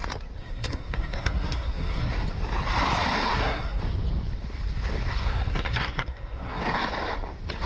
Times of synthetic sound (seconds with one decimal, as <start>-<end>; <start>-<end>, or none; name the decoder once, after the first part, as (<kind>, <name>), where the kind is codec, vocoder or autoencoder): 0.4-2.1 (codec, SNAC); 3.3-3.8; 5.1-6.6